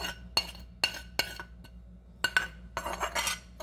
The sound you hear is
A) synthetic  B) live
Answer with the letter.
B